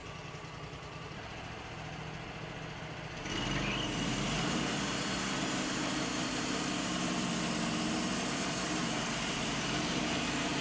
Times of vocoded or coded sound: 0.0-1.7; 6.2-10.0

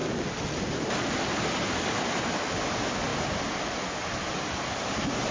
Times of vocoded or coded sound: none

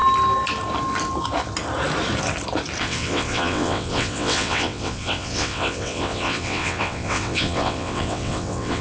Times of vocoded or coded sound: 2.8-8.8

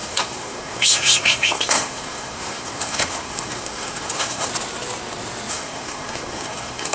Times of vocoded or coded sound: 0.0-4.5; 5.5-6.9